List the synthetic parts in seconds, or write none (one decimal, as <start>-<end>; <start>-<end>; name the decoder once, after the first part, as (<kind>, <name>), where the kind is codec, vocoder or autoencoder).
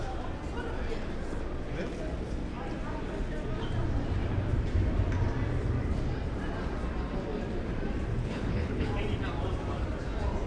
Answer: 8.2-8.9 (codec, HILCodec)